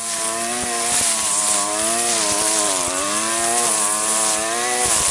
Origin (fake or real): real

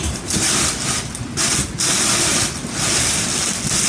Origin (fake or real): real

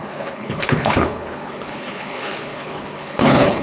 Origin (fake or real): fake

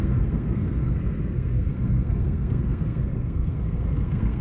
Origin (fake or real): fake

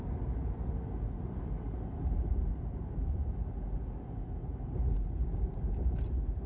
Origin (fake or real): real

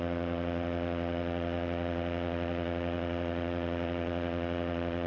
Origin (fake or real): fake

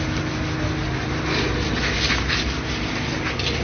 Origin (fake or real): real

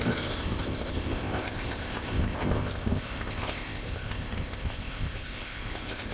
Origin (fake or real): fake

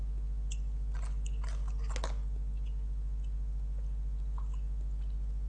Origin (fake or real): real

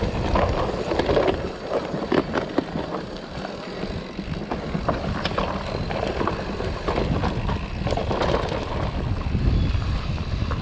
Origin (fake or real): real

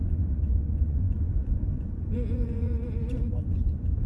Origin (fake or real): fake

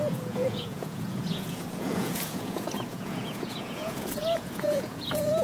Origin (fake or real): fake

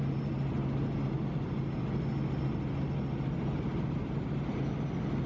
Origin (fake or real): real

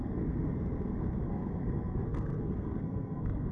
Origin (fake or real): fake